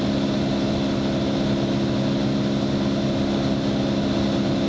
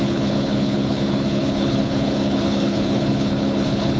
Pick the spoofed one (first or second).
second